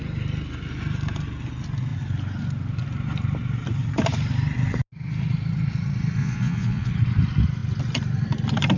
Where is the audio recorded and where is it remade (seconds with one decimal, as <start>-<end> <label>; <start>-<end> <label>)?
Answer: 0.0-6.2 recorded; 6.2-6.9 remade; 6.9-8.8 recorded